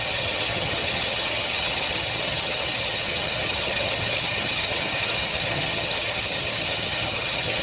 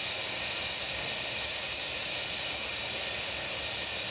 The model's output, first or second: first